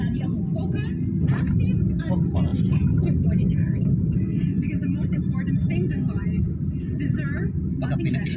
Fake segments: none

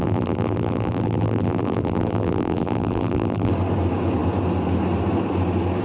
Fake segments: 0.0-3.5 (vocoder, BigVGAN v2)

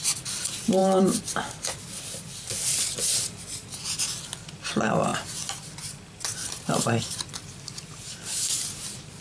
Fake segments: 0.8-3.7 (vocoder, BigVGAN v2); 5.1-7.0